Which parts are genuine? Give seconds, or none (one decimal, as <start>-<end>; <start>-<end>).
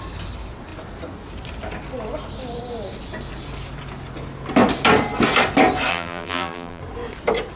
0.0-5.9; 6.8-7.6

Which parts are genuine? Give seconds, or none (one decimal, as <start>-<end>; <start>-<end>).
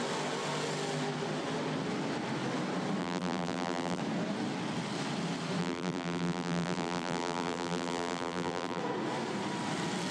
0.0-3.0; 4.0-5.6; 8.8-10.1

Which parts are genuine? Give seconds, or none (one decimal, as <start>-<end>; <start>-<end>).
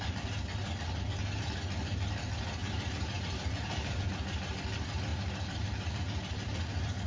0.0-2.6; 4.1-5.1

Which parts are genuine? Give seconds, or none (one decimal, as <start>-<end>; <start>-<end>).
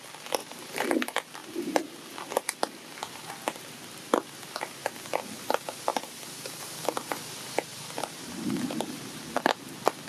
0.0-0.4; 0.9-1.4; 1.9-7.7; 9.2-10.1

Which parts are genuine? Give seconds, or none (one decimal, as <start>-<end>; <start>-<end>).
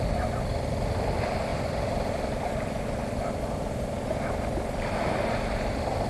0.0-1.5; 2.5-6.1